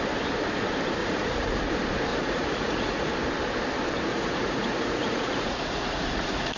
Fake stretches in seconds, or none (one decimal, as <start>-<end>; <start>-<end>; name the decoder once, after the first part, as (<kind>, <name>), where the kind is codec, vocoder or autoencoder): 1.0-1.6 (vocoder, Vocos); 2.1-3.1; 4.1-6.6